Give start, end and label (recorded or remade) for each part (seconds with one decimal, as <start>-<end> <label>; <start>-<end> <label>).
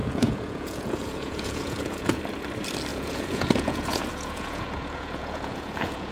0.0-2.2 remade; 2.2-2.9 recorded; 2.9-6.1 remade